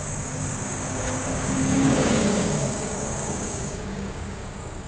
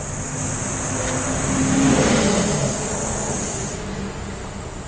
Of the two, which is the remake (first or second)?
first